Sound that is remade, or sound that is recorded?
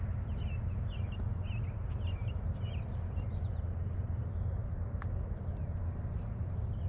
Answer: recorded